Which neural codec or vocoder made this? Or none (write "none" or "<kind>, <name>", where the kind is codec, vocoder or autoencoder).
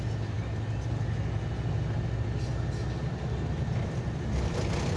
none